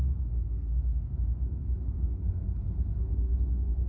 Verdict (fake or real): fake